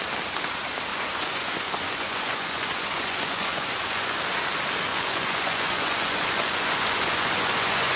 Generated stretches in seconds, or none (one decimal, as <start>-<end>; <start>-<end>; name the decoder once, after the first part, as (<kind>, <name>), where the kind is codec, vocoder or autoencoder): 0.9-4.2 (vocoder, Vocos); 4.9-8.0